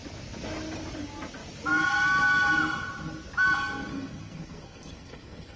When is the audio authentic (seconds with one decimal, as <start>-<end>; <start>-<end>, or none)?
0.0-3.9